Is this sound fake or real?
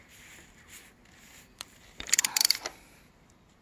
fake